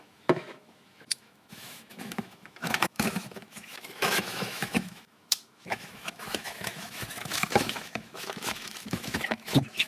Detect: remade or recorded remade